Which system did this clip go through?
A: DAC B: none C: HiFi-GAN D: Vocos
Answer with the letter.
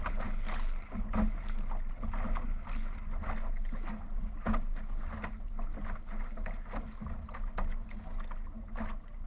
B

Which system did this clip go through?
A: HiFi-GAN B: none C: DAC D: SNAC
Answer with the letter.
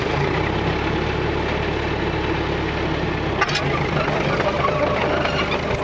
B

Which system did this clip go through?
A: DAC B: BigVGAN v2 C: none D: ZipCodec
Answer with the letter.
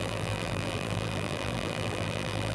B